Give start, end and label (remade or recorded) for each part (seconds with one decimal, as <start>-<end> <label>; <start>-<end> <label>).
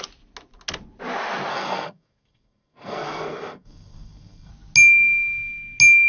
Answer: 0.0-1.5 recorded; 1.5-4.5 remade; 4.5-6.1 recorded